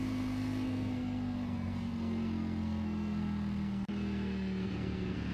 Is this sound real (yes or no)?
no